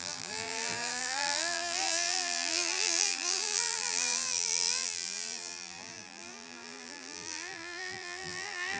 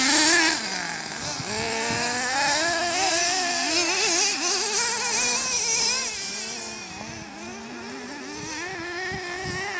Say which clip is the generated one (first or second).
first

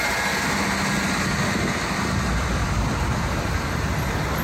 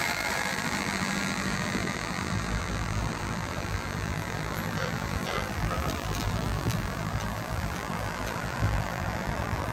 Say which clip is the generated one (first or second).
second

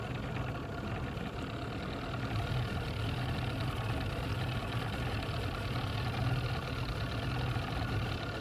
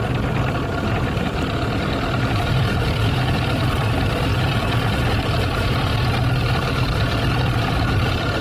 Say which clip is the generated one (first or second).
second